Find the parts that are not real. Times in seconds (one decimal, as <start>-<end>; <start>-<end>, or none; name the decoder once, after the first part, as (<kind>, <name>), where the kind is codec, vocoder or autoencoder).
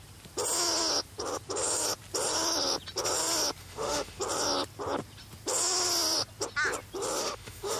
3.6-4.2 (autoencoder, DAC-VAE); 7.2-7.8